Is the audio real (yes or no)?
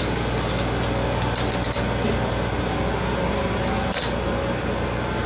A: yes